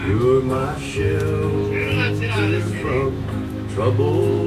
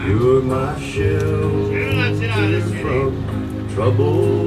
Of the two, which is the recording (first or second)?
second